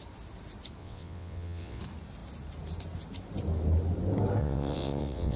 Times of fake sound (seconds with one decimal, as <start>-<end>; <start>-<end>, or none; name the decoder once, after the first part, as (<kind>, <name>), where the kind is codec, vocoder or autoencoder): 0.8-1.8 (vocoder, WaveNeXt); 4.4-5.4